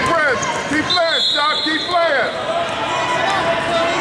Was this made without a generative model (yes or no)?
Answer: yes